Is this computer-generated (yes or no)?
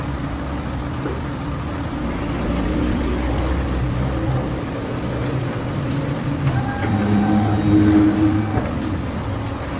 no